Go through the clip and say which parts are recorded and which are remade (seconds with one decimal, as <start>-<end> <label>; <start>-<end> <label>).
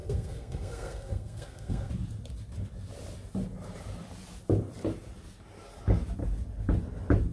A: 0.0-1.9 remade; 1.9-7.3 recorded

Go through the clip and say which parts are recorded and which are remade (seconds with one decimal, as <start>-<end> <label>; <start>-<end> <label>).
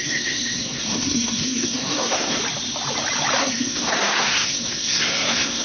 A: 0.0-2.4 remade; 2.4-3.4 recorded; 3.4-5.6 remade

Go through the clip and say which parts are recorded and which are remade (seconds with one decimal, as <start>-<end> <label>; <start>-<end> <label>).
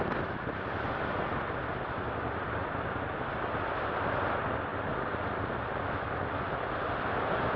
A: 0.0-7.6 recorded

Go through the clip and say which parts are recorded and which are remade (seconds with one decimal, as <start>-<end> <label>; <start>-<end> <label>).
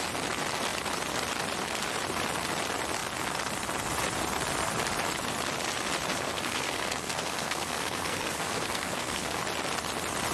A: 0.0-6.1 recorded; 6.1-9.4 remade; 9.4-10.3 recorded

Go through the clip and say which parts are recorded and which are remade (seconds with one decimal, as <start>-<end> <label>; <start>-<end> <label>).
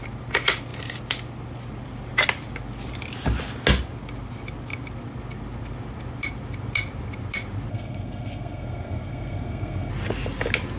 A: 0.0-7.7 recorded; 7.7-9.9 remade; 9.9-10.8 recorded